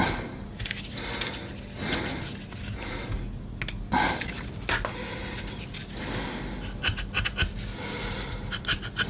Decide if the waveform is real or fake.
real